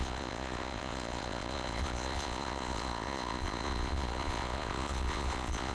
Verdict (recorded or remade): remade